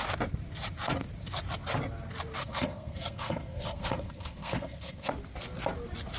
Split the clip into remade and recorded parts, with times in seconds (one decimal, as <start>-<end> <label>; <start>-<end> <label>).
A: 0.0-2.4 recorded; 2.4-5.1 remade; 5.1-6.2 recorded